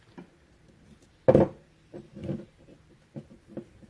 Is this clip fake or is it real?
real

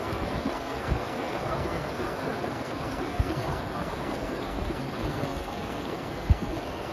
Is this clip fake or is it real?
fake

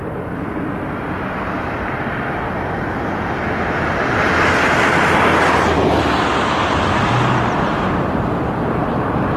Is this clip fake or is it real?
real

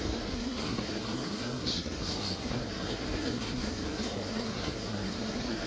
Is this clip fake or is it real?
fake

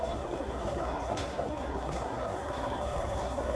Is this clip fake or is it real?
fake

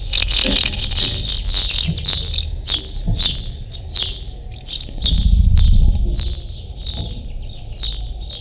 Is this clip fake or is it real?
real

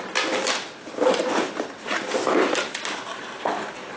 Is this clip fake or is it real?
real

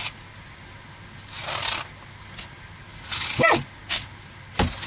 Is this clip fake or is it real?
real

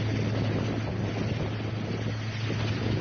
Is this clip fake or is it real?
real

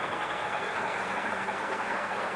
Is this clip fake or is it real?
fake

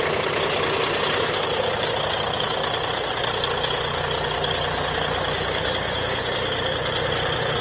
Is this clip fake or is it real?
real